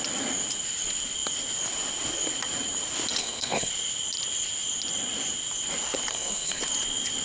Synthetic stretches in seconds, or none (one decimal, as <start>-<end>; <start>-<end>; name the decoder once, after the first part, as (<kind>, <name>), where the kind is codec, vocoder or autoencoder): 3.2-3.7 (codec, SNAC); 6.1-6.6